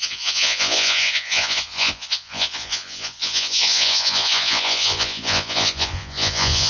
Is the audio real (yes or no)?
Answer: no